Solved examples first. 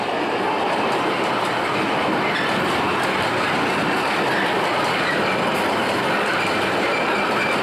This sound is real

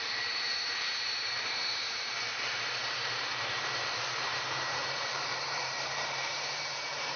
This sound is fake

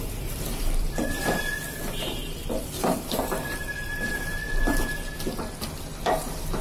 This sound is fake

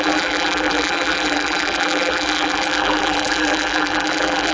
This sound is fake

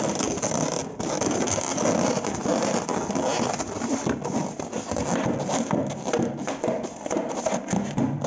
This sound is real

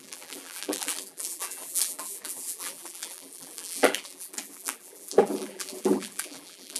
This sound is fake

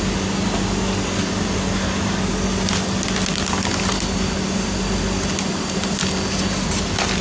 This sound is real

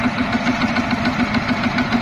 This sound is real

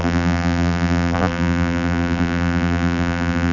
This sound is fake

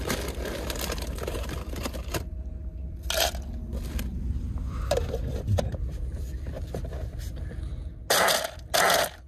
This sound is real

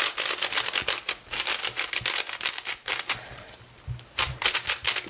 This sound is real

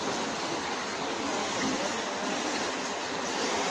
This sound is real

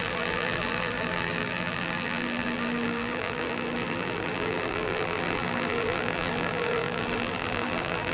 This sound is fake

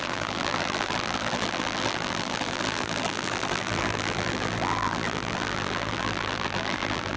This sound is fake